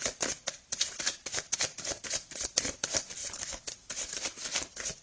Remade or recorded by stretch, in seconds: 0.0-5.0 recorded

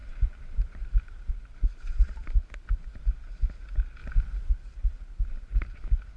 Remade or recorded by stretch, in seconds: 0.0-1.3 remade; 1.3-4.0 recorded; 4.0-4.5 remade; 4.5-6.2 recorded

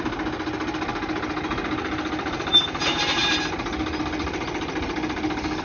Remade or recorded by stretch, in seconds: 0.0-5.6 recorded

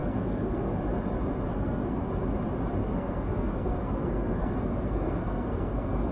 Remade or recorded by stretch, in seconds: 0.0-0.8 remade; 0.8-1.5 recorded; 1.5-2.1 remade; 2.1-2.8 recorded; 2.8-6.1 remade

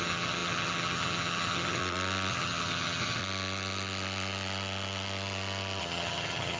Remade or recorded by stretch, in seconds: 0.0-1.8 remade; 1.8-2.3 recorded; 2.3-3.2 remade; 3.2-5.8 recorded; 5.8-6.6 remade

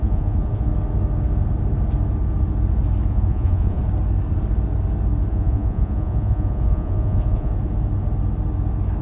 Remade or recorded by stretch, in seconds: 0.0-0.7 remade; 0.7-3.1 recorded; 3.1-3.8 remade; 3.8-5.3 recorded; 5.3-7.5 remade; 7.5-9.0 recorded

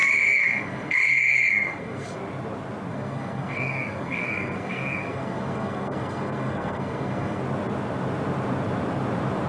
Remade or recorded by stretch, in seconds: 0.0-2.2 remade; 2.2-2.9 recorded; 2.9-7.4 remade; 7.4-9.5 recorded

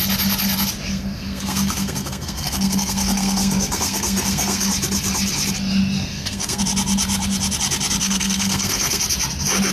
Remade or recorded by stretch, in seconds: 0.0-0.9 recorded; 0.9-4.7 remade; 4.7-6.0 recorded; 6.0-6.6 remade; 6.6-8.0 recorded; 8.0-9.0 remade; 9.0-9.7 recorded